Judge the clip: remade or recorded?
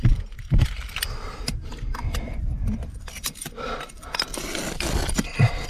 remade